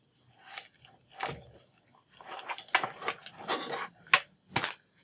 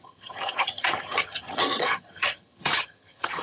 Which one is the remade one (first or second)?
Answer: second